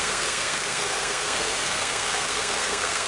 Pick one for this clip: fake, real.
fake